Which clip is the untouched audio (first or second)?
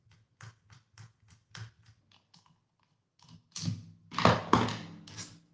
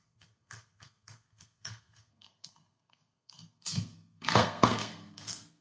first